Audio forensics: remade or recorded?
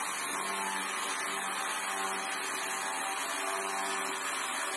recorded